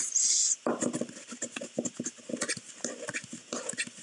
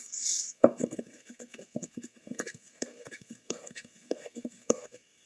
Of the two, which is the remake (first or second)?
second